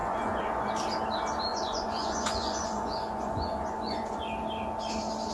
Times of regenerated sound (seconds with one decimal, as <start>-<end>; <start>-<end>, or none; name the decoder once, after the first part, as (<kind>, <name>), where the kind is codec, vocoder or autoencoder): 0.0-0.7 (vocoder, Vocos); 1.5-4.2